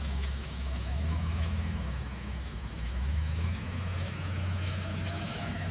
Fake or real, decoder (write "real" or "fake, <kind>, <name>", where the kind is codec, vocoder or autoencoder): fake, autoencoder, DAC-VAE